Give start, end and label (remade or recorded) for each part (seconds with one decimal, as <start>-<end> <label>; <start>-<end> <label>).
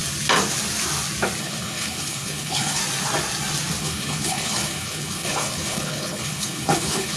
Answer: 0.0-1.4 recorded; 1.4-2.8 remade; 2.8-3.8 recorded; 3.8-7.2 remade